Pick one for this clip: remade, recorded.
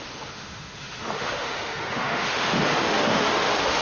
remade